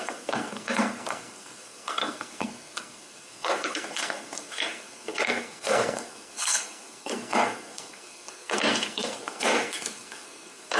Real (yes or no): no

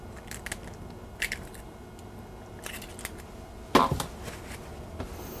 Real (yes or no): yes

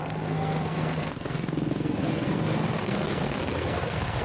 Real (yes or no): no